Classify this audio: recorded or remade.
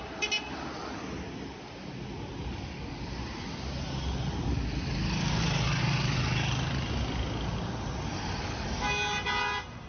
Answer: recorded